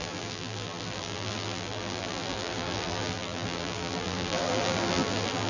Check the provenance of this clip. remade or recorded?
remade